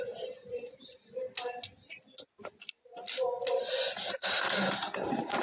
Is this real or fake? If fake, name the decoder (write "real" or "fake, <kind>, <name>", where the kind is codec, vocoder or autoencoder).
real